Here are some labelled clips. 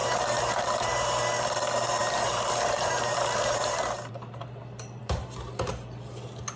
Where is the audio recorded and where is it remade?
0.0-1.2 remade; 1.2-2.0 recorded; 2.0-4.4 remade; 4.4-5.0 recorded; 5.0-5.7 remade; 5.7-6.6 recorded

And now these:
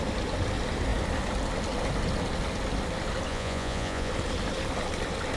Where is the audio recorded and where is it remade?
0.0-3.3 recorded; 3.3-4.1 remade; 4.1-5.4 recorded